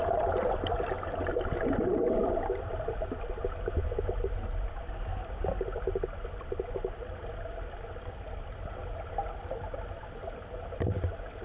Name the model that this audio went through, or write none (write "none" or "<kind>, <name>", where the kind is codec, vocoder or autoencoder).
none